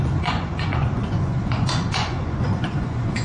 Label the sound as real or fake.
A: fake